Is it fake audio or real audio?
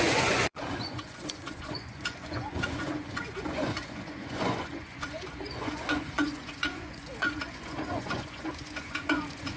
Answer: fake